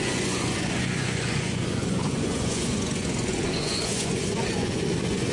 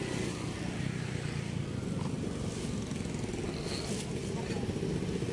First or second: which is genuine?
second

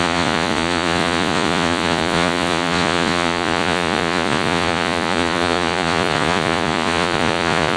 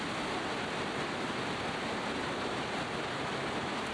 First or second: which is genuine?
second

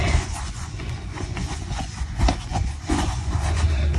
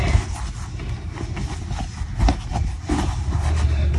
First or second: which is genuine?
second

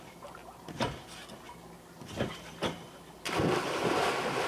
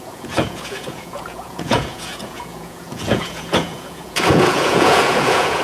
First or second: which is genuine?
first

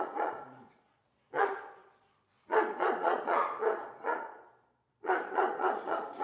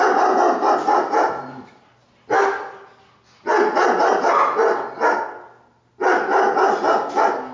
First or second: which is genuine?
second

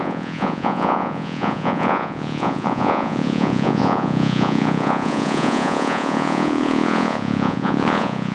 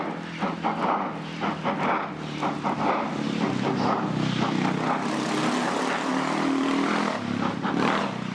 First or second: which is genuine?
second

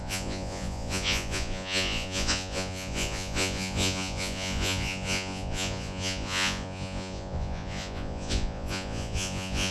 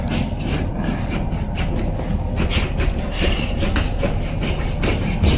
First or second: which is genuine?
second